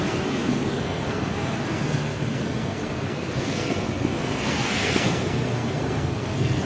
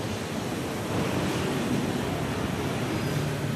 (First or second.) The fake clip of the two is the first